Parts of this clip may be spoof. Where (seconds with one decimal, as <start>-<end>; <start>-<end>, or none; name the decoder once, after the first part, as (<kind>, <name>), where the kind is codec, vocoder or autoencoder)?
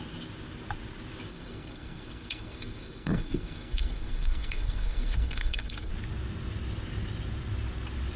1.3-5.9 (codec, SNAC)